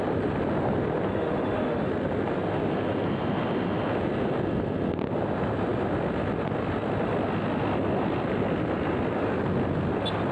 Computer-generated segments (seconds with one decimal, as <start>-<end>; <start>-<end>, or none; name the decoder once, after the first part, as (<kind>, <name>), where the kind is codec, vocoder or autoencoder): 1.1-1.9 (autoencoder, DAC-VAE)